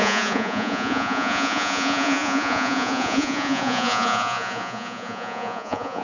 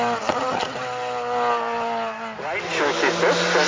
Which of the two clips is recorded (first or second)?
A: second